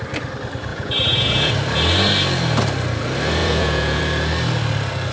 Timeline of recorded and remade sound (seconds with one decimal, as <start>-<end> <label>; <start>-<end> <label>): 0.0-0.7 recorded; 0.7-1.5 remade; 1.5-3.4 recorded; 3.4-4.0 remade; 4.0-5.1 recorded